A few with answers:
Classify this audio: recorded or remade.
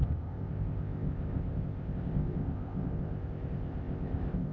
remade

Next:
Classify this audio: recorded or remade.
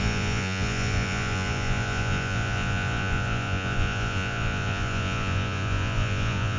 remade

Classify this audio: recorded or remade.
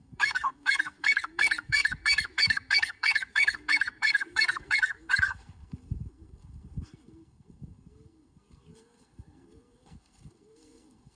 remade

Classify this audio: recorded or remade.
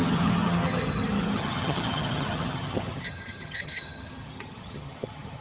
remade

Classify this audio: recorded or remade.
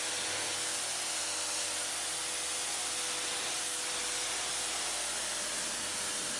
recorded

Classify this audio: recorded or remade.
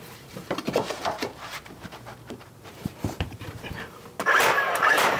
remade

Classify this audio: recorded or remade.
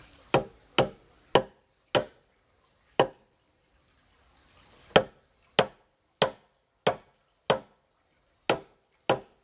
recorded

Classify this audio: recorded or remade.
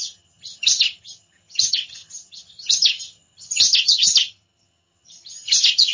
remade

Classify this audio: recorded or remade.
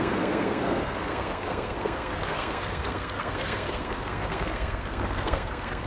remade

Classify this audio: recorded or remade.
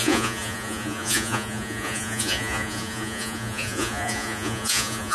remade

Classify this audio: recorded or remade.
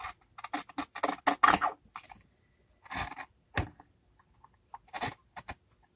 recorded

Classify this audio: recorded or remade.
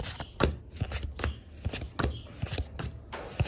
recorded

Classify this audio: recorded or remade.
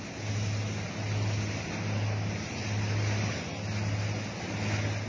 recorded